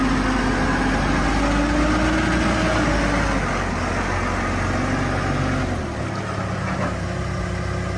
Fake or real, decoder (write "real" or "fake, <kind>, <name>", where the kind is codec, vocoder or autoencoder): real